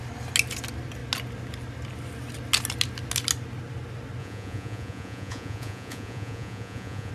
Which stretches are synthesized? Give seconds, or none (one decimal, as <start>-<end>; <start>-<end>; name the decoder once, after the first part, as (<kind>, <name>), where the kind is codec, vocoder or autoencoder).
4.2-7.1 (vocoder, Vocos)